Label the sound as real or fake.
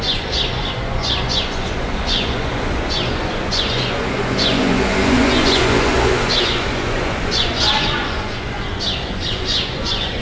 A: fake